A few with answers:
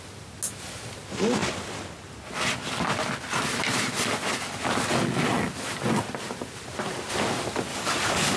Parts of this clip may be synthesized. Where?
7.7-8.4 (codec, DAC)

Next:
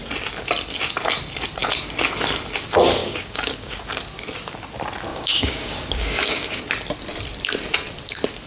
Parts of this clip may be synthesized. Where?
3.0-3.8 (codec, DAC); 5.1-6.6

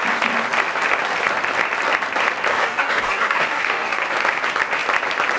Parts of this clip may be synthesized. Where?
2.5-4.0 (codec, DAC)

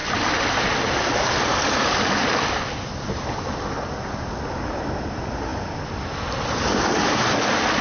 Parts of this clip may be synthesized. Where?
none

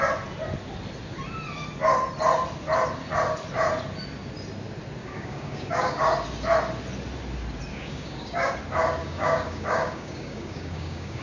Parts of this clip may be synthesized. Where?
5.0-6.0 (codec, DAC); 7.7-8.5; 9.0-11.2

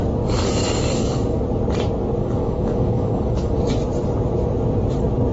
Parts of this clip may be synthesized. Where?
0.4-1.4 (codec, DAC); 2.2-3.6

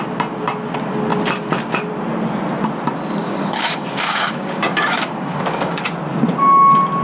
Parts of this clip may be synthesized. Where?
3.2-5.8 (codec, DAC)